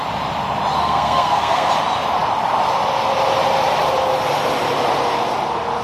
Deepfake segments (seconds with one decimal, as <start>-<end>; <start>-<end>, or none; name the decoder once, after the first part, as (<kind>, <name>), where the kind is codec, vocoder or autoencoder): 0.8-1.7 (codec, SNAC)